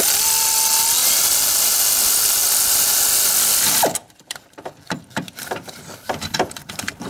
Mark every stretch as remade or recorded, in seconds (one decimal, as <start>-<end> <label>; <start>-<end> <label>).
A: 0.0-1.0 recorded; 1.0-1.8 remade; 1.8-2.4 recorded; 2.4-3.1 remade; 3.1-4.0 recorded; 4.0-7.1 remade